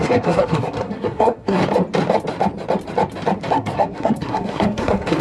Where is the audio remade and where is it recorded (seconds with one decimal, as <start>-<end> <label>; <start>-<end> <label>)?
0.0-1.6 remade; 1.6-3.5 recorded; 3.5-5.2 remade